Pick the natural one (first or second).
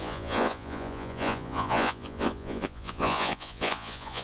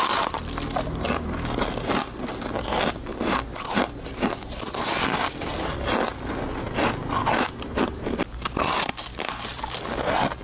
second